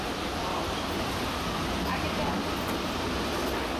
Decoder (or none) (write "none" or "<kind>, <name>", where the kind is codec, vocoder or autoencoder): none